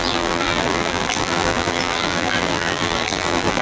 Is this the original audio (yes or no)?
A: no